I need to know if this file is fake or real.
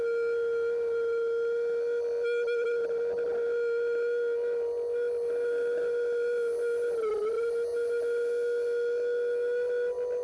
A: real